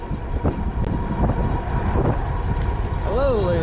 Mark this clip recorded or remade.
recorded